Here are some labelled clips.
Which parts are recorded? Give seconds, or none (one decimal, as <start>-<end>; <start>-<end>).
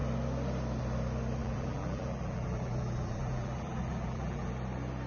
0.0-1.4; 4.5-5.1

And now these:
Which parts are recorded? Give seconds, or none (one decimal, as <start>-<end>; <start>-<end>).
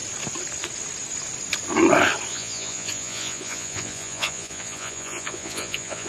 0.0-2.3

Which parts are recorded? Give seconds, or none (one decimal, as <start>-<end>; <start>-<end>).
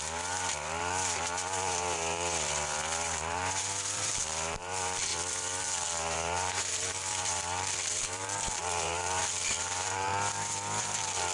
5.1-5.6; 10.1-10.8